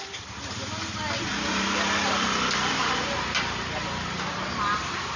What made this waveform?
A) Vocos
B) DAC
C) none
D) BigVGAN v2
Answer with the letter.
C